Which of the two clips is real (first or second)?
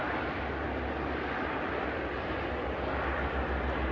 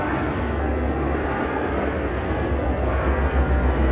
first